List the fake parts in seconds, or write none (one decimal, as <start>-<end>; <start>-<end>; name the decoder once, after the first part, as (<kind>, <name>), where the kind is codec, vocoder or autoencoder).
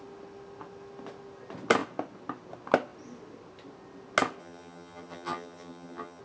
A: 4.4-6.2 (vocoder, HiFi-GAN)